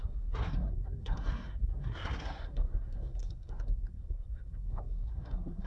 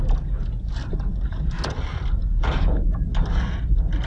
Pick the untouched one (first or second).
second